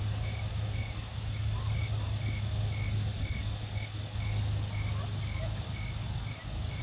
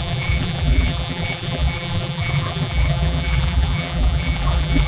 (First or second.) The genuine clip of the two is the first